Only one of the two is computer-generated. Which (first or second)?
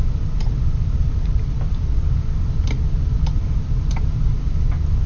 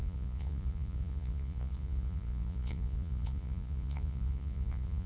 second